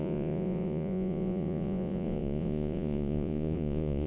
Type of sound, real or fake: fake